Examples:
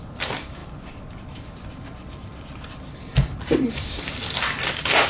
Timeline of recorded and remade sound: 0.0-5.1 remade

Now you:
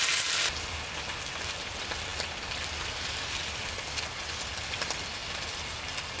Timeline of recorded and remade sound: 0.0-6.2 recorded

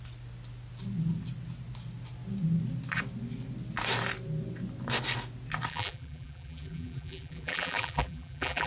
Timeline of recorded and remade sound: 0.0-5.7 recorded; 5.7-8.7 remade

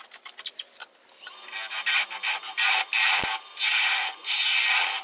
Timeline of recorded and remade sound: 0.0-5.0 recorded